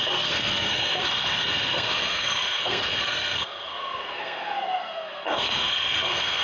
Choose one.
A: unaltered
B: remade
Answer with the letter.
B